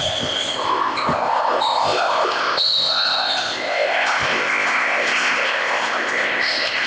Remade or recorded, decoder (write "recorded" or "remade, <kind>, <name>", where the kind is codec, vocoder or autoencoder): remade, codec, ZipCodec